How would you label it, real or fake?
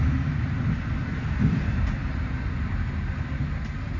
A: real